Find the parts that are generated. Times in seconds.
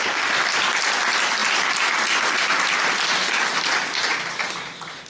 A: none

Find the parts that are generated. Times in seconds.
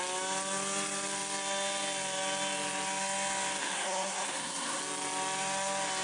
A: 3.6-4.8 (codec, SNAC)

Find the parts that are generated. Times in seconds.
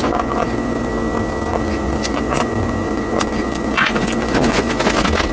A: 0.0-0.9 (vocoder, Vocos); 1.5-4.7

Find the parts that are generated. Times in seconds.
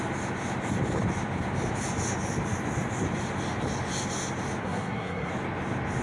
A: 4.6-5.3 (codec, SNAC)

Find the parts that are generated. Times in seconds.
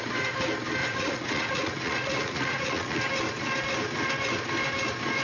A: 0.8-3.0 (vocoder, Vocos)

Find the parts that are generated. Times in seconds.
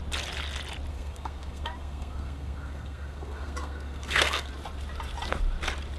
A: 0.9-4.5 (codec, SNAC)